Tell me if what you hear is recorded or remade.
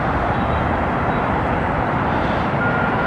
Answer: remade